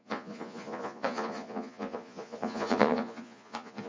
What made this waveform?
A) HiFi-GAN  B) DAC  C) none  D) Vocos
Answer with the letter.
D